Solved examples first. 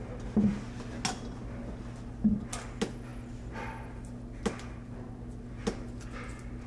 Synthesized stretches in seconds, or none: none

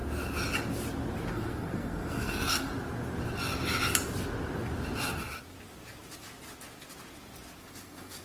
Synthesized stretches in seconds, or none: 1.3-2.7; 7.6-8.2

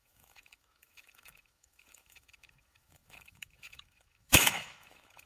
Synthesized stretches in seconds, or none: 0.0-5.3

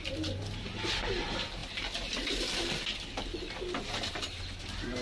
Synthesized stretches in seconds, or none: none

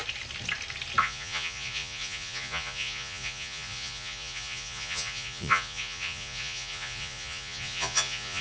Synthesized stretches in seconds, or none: 1.0-8.4

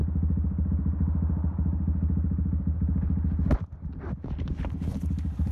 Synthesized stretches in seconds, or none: none